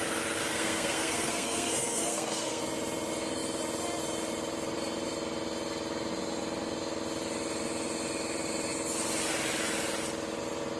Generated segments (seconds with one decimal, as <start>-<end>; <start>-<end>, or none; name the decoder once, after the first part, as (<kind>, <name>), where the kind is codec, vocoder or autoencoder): 0.5-2.6 (codec, SNAC)